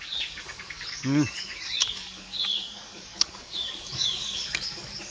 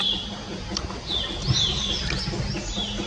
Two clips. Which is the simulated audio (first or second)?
first